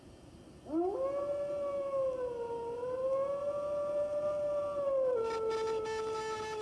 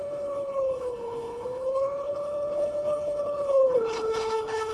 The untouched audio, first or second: first